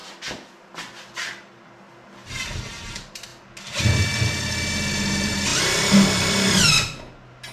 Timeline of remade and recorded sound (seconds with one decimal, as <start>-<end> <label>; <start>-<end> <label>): 0.0-5.5 recorded; 5.5-6.5 remade; 6.5-7.5 recorded

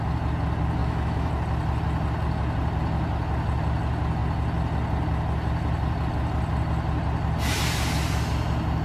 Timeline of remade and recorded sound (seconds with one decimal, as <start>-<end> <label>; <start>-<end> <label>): 0.0-0.8 recorded; 0.8-1.3 remade; 1.3-8.8 recorded

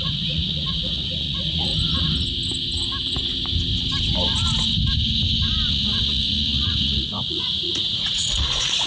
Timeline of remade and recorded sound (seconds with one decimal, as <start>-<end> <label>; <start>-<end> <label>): 0.0-1.7 remade; 1.7-5.7 recorded; 5.7-8.9 remade

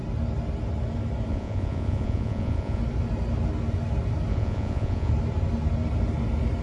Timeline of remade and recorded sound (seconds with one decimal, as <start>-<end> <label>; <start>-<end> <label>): 0.0-1.3 recorded; 1.3-2.8 remade; 2.8-4.3 recorded; 4.3-5.1 remade; 5.1-6.6 recorded